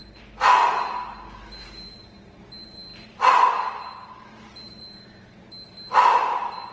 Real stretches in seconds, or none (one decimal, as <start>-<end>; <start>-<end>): 0.0-6.7